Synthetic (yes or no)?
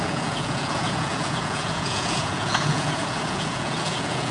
yes